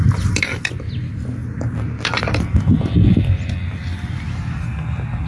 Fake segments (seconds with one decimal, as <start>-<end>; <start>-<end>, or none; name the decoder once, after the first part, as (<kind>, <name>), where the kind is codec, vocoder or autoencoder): none